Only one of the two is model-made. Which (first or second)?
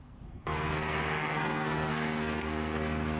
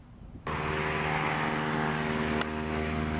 first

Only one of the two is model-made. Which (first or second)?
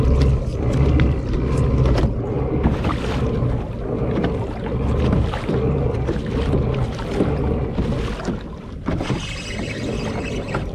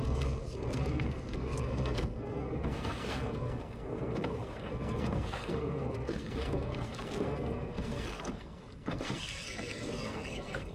second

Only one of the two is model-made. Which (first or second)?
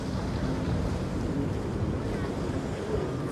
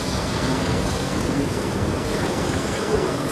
second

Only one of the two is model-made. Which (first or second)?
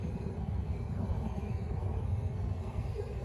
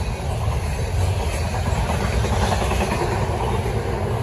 first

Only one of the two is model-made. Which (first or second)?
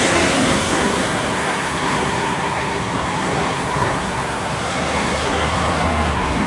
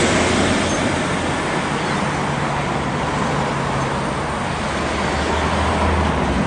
first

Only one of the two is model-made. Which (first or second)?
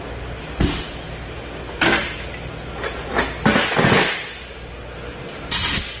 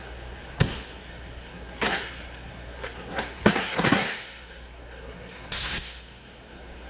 second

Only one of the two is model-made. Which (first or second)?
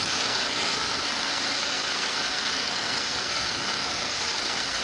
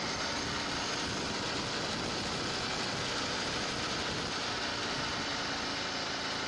first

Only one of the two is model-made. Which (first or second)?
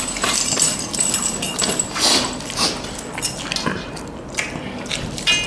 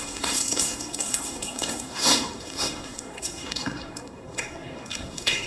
second